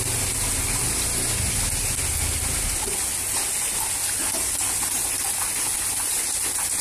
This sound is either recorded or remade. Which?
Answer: recorded